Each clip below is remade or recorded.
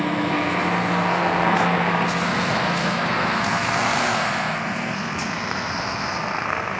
remade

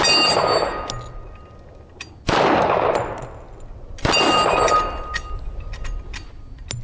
recorded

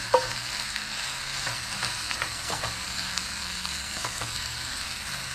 remade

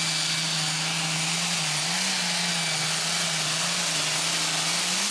recorded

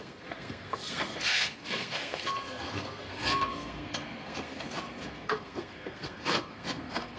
remade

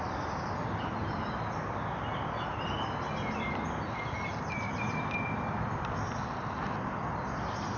recorded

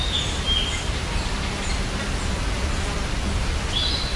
recorded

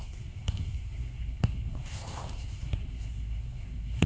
remade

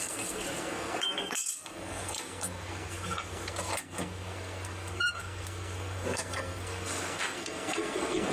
remade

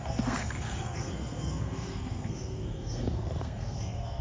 remade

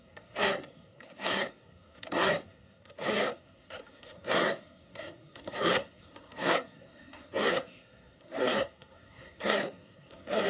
remade